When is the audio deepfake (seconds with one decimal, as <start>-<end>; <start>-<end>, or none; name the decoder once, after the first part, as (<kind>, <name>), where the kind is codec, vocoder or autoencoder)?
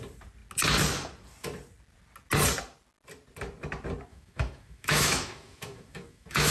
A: 4.1-6.5 (autoencoder, DAC-VAE)